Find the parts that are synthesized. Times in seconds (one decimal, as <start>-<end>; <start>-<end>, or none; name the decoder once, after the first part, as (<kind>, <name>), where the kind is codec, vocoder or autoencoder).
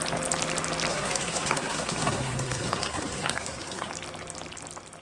0.9-3.9 (codec, SNAC)